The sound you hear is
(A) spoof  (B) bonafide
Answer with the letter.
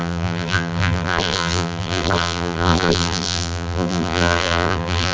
A